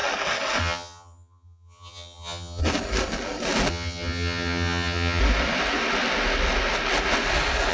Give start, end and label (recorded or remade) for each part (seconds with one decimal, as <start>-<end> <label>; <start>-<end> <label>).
0.0-0.6 recorded; 0.6-2.6 remade; 2.6-3.7 recorded; 3.7-5.2 remade; 5.2-7.7 recorded